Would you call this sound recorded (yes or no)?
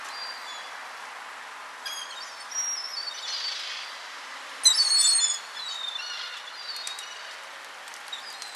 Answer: yes